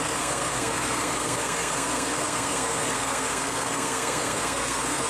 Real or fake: fake